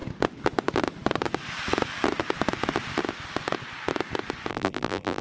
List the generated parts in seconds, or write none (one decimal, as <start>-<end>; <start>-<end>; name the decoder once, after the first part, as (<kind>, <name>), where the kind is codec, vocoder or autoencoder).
4.5-5.2 (vocoder, BigVGAN v2)